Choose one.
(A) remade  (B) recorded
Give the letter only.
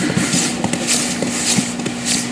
B